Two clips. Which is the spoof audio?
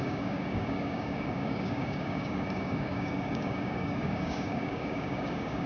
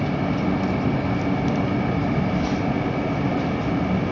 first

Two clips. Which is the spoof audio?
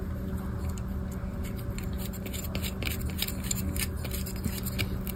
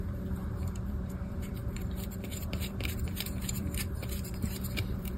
second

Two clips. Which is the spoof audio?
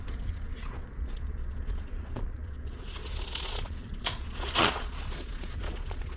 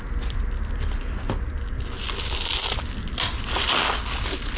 first